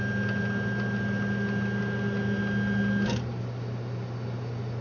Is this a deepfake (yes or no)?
no